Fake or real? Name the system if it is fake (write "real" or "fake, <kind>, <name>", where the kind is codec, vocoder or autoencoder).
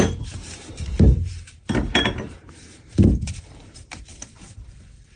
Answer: fake, vocoder, BigVGAN v2